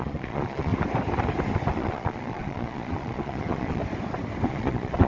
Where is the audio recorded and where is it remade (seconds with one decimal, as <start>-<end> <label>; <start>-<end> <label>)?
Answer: 0.0-0.7 remade; 0.7-1.7 recorded; 1.7-3.8 remade; 3.8-4.5 recorded; 4.5-5.1 remade

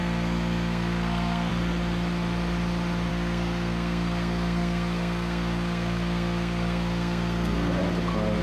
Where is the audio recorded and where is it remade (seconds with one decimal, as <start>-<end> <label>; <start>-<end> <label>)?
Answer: 0.0-1.5 remade; 1.5-3.1 recorded; 3.1-7.8 remade; 7.8-8.4 recorded

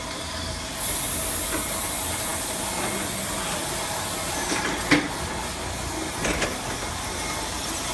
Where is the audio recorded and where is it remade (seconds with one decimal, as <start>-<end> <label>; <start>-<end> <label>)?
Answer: 0.0-7.9 recorded

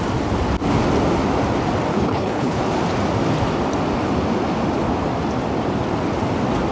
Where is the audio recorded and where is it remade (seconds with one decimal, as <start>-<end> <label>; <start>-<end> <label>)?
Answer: 0.0-1.9 recorded; 1.9-2.6 remade; 2.6-6.7 recorded